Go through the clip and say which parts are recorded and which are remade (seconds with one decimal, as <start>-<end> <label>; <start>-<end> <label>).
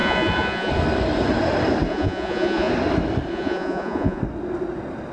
0.0-0.7 remade; 0.7-1.9 recorded; 1.9-2.7 remade; 2.7-3.3 recorded; 3.3-4.2 remade; 4.2-5.1 recorded